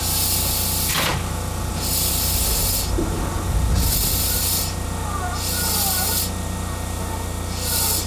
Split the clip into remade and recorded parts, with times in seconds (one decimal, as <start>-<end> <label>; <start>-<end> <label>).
0.0-8.1 recorded